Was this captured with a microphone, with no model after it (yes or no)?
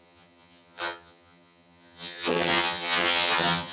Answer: no